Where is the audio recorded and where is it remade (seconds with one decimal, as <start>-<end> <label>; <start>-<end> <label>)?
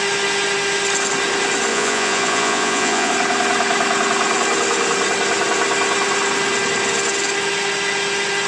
0.0-1.7 recorded; 1.7-3.1 remade; 3.1-8.5 recorded